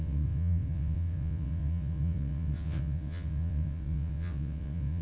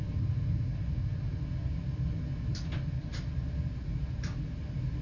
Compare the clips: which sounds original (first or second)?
second